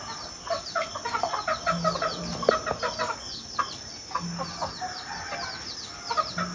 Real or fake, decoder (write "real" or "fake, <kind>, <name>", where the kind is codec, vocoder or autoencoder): real